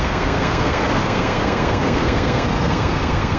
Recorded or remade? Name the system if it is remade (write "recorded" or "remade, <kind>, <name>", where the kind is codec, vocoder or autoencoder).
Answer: remade, codec, SNAC